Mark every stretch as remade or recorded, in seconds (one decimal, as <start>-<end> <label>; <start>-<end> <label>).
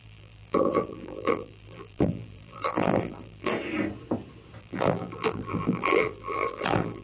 0.0-3.5 remade; 3.5-4.6 recorded; 4.6-7.0 remade